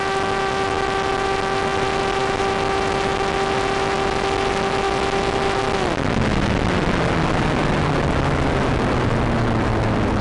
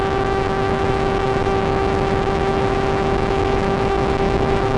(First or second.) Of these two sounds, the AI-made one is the second